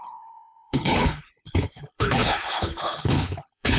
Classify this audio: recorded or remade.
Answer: remade